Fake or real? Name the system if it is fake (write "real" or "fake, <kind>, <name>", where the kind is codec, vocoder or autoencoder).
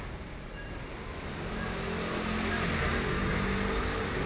real